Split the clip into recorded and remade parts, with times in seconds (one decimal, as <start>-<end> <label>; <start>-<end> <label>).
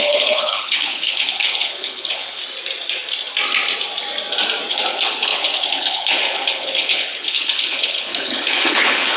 0.0-2.4 remade; 2.4-4.7 recorded; 4.7-9.2 remade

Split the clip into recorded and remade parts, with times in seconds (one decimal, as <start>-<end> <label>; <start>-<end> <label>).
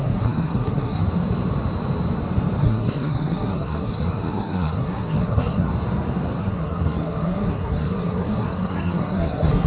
0.0-1.0 remade; 1.0-2.6 recorded; 2.6-5.7 remade; 5.7-6.4 recorded; 6.4-9.7 remade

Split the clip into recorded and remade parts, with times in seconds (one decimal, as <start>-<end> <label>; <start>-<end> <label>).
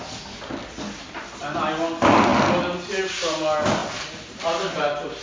0.0-5.2 recorded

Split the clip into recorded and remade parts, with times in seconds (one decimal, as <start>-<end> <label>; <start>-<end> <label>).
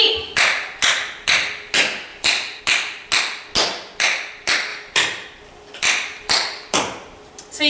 0.0-2.1 recorded; 2.1-2.6 remade; 2.6-4.7 recorded; 4.7-7.3 remade; 7.3-7.7 recorded